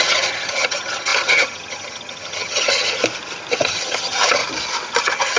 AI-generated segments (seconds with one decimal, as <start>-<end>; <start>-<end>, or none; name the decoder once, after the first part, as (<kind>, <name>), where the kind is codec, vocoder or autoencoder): 0.0-3.0 (vocoder, HiFi-GAN); 3.5-4.4; 5.0-5.4